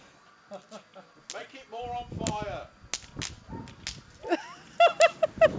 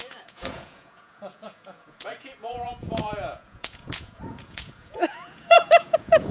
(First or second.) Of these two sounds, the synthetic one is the second